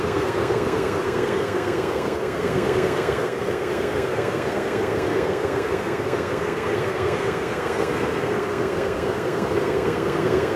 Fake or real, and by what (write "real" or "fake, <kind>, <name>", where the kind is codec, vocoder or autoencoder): fake, codec, SNAC